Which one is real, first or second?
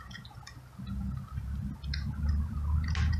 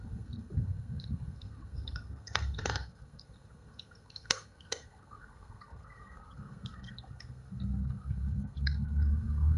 first